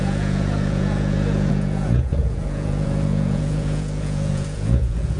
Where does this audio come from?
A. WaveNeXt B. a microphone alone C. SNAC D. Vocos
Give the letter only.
D